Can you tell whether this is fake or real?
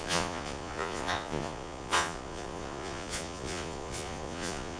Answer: fake